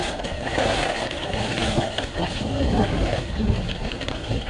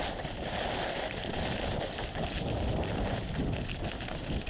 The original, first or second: second